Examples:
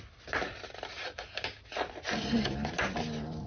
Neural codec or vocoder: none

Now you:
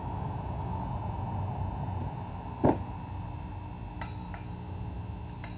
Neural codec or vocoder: none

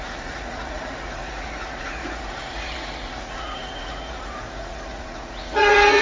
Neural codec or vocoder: vocoder, Vocos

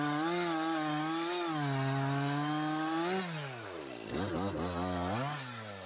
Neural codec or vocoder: none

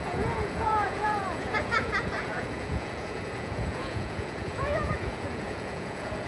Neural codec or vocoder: vocoder, Vocos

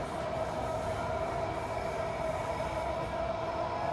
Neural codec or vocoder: none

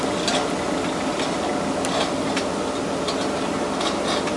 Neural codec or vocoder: none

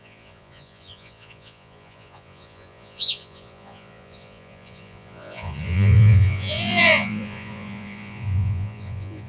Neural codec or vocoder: vocoder, Vocos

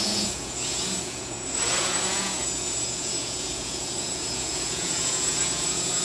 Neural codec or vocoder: vocoder, Vocos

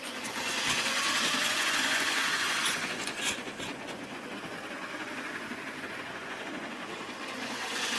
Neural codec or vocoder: vocoder, Vocos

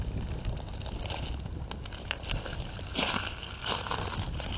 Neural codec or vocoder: none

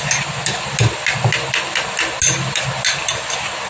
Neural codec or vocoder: none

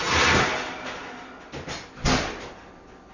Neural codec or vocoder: none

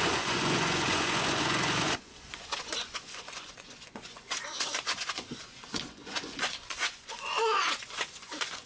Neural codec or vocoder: vocoder, Vocos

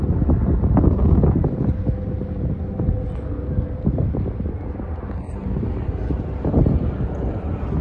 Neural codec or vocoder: none